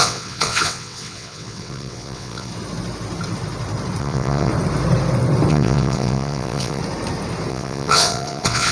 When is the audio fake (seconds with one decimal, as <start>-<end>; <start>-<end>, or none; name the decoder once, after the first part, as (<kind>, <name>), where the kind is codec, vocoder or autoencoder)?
0.0-2.5 (vocoder, WaveNeXt); 4.0-4.5; 5.5-6.8; 7.5-8.7